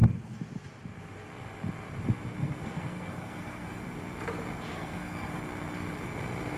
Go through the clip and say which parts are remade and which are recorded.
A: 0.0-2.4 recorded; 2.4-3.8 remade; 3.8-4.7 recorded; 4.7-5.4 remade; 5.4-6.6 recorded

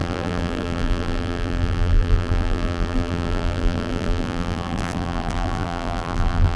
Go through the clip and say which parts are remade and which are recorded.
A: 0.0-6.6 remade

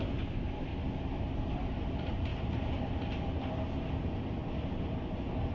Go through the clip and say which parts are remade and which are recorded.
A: 0.0-0.7 remade; 0.7-1.2 recorded; 1.2-2.3 remade; 2.3-3.5 recorded; 3.5-5.5 remade

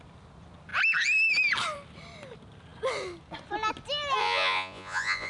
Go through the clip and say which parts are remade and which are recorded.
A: 0.0-4.2 recorded; 4.2-5.3 remade

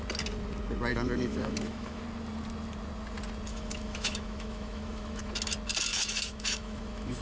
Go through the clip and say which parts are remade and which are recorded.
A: 0.0-0.9 recorded; 0.9-2.0 remade; 2.0-3.5 recorded; 3.5-5.3 remade; 5.3-5.9 recorded; 5.9-7.2 remade

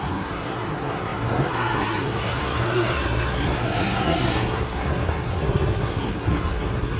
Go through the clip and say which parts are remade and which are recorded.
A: 0.0-7.0 remade